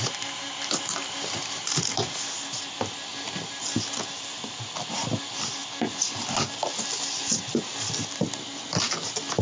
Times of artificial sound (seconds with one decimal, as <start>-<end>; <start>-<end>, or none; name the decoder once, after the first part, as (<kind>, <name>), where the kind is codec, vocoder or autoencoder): none